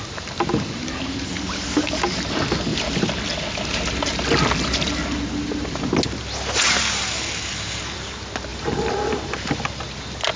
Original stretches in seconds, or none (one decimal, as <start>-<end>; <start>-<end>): 0.0-8.5; 9.8-10.4